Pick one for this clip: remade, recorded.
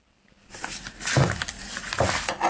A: recorded